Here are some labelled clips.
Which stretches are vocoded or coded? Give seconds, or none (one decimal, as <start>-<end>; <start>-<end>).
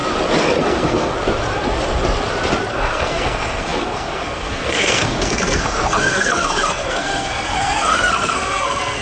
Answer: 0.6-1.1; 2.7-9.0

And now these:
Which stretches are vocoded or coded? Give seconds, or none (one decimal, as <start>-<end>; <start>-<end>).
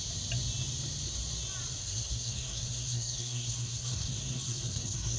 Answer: 1.8-5.2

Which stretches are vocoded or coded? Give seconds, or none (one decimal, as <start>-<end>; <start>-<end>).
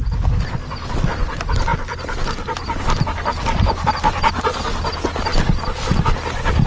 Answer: none